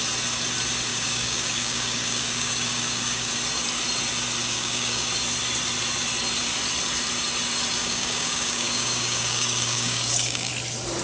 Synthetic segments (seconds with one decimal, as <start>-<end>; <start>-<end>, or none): 0.9-3.3; 4.4-5.1; 7.8-10.5